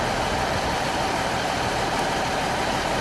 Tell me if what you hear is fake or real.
fake